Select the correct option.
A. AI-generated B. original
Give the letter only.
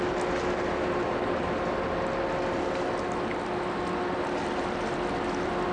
B